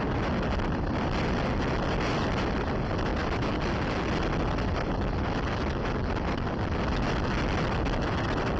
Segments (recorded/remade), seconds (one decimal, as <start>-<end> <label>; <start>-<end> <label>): 0.0-8.6 recorded